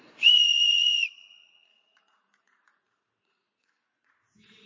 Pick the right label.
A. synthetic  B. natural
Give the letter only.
A